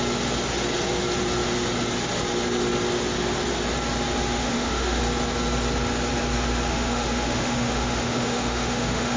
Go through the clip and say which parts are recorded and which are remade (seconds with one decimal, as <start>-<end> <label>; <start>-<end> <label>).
0.0-4.4 recorded; 4.4-5.0 remade; 5.0-6.7 recorded; 6.7-9.2 remade